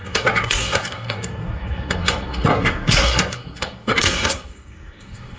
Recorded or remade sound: remade